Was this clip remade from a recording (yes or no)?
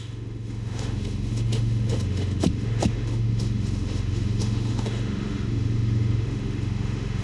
yes